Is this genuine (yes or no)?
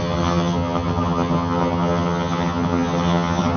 no